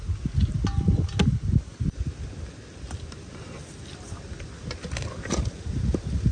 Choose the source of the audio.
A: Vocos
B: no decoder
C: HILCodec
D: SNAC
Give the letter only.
B